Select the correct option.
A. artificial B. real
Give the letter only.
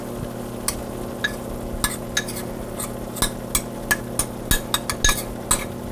B